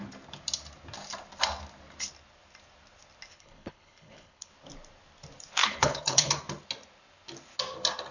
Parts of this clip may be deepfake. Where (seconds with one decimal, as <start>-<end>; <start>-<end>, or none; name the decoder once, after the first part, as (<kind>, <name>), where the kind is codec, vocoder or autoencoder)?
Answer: 3.3-4.5 (codec, HILCodec); 5.6-6.3